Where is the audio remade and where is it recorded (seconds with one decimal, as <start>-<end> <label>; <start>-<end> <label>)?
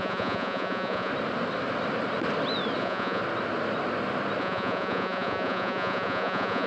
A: 0.0-1.1 remade; 1.1-2.8 recorded; 2.8-3.2 remade; 3.2-4.4 recorded; 4.4-6.7 remade